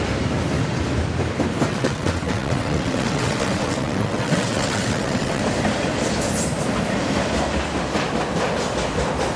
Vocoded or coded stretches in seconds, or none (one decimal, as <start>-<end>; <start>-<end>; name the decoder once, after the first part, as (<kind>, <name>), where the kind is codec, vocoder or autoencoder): 1.7-5.4 (vocoder, WaveNeXt)